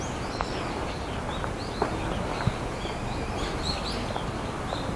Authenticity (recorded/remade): recorded